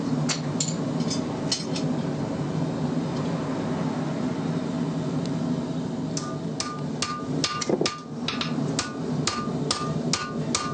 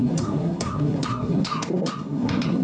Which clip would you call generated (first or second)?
second